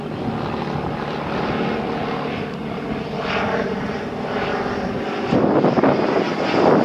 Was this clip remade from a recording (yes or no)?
no